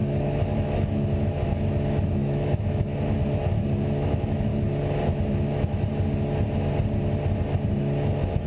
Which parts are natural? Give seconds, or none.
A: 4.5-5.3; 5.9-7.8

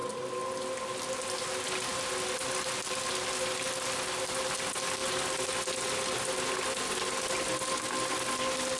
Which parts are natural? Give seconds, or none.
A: 0.0-8.8

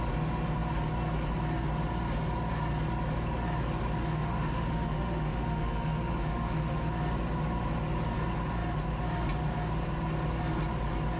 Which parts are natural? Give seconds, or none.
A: 0.0-4.0; 6.9-11.2

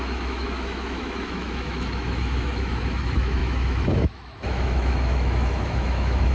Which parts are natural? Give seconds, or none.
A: none

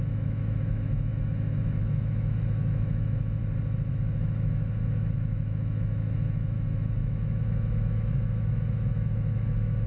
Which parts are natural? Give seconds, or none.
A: 3.4-3.9